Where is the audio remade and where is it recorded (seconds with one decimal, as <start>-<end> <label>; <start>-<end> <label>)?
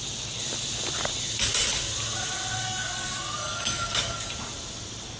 0.0-2.6 recorded; 2.6-4.3 remade; 4.3-5.2 recorded